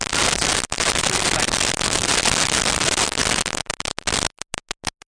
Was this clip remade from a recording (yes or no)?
no